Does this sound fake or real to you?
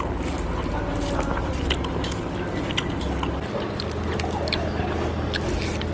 real